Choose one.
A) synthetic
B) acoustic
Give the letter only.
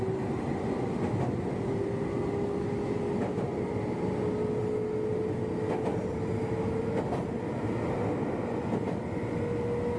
B